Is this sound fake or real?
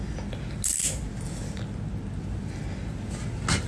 real